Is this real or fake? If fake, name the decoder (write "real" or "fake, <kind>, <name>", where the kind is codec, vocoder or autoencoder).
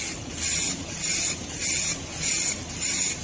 real